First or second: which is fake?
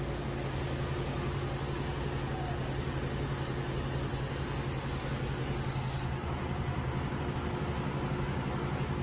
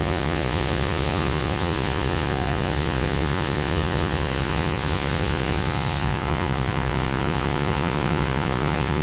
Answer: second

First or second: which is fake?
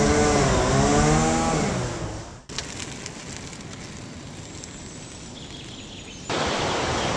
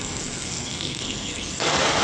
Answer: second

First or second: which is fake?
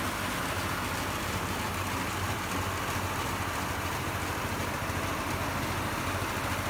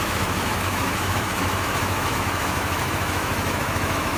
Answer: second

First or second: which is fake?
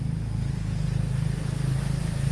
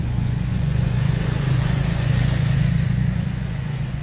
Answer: second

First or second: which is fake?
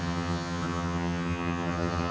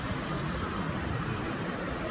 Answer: first